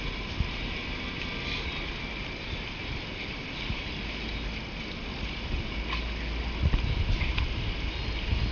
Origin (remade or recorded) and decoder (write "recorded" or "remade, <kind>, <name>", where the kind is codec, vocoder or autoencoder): recorded